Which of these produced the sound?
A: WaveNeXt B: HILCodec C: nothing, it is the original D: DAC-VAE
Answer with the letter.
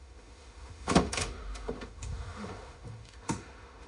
D